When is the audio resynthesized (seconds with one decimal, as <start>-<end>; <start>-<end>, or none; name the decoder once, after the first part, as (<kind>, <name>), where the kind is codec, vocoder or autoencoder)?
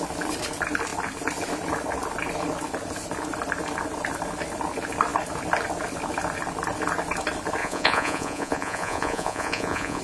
7.6-10.0 (vocoder, Vocos)